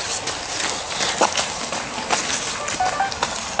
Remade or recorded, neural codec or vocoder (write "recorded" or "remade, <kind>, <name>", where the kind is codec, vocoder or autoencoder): recorded